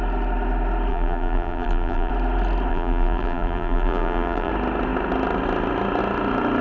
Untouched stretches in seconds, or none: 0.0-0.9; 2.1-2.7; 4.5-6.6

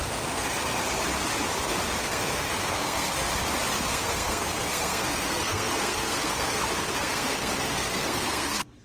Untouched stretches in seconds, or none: 0.8-2.0; 3.3-3.9

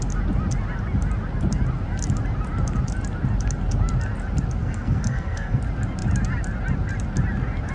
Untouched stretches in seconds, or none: 0.0-4.6; 5.6-7.7

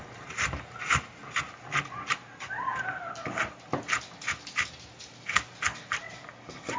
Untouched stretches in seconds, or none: 0.0-6.8